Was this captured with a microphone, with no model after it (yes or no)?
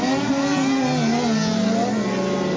yes